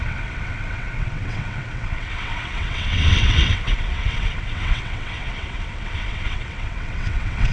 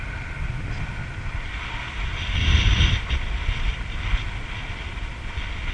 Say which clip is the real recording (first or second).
second